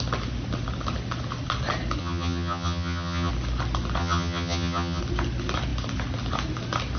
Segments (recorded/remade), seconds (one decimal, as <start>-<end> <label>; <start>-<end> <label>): 0.0-2.0 recorded; 2.0-3.3 remade; 3.3-4.0 recorded; 4.0-5.0 remade; 5.0-7.0 recorded